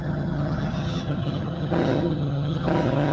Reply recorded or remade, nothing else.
remade